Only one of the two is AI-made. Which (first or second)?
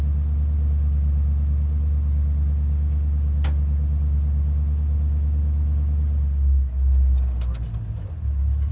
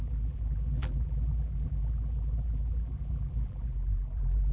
second